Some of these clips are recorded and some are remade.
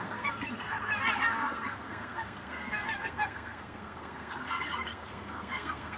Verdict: remade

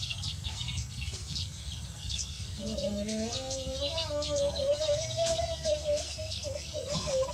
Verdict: remade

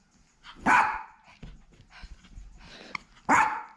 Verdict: recorded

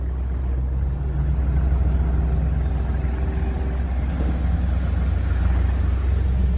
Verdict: recorded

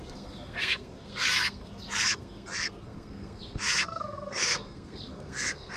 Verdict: remade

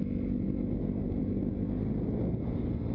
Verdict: recorded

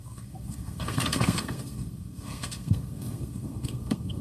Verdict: remade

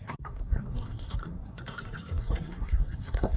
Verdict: remade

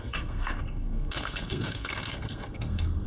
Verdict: remade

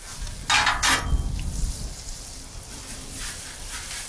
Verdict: recorded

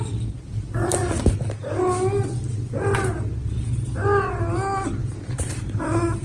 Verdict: recorded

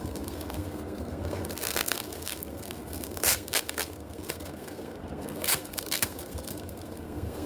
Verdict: remade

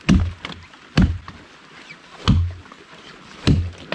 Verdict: recorded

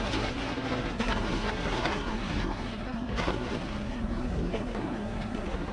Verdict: remade